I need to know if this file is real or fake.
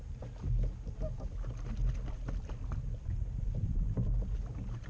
real